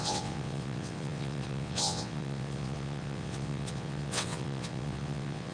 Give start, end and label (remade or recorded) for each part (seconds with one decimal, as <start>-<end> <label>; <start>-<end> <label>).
0.0-5.5 remade